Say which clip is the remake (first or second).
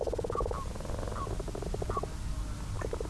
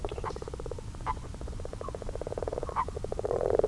second